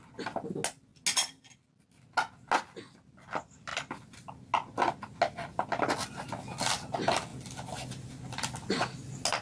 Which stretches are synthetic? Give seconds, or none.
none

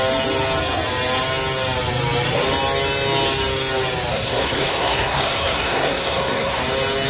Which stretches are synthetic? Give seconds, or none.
4.1-6.6 (codec, SNAC)

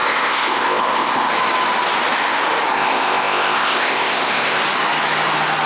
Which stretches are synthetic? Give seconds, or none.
0.0-1.3 (codec, ZipCodec); 2.7-4.6

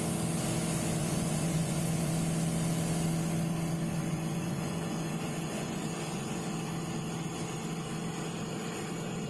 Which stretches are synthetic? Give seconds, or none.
1.0-2.1 (vocoder, Vocos); 4.0-6.4